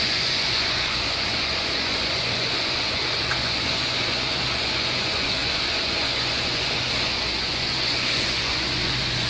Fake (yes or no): yes